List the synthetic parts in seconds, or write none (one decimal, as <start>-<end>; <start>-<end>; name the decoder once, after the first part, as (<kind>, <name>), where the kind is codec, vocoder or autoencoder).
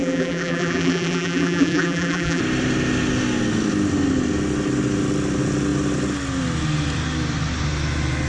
0.0-2.4 (vocoder, BigVGAN v2)